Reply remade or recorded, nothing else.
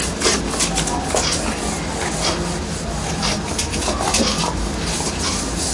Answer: recorded